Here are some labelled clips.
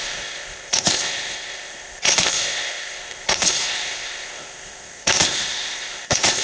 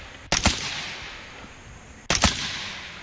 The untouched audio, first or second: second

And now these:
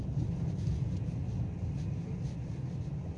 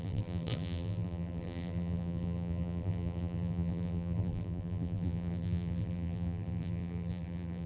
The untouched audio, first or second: first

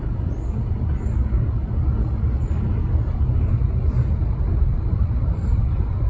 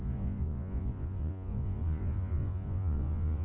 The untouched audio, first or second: first